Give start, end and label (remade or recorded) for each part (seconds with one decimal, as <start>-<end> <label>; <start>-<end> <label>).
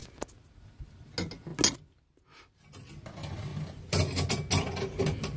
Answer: 0.0-5.4 recorded